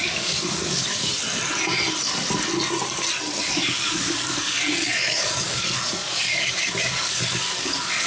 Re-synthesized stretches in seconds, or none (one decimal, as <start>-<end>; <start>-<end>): 0.0-1.1; 3.4-8.1